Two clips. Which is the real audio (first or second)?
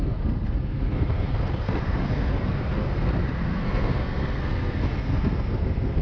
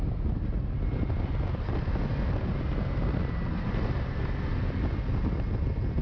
second